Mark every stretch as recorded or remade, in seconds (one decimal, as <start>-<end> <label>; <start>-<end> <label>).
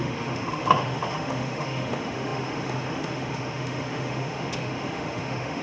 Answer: 0.0-5.6 remade